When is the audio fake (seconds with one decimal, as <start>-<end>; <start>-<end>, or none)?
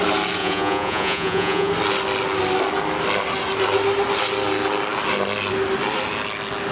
0.4-1.7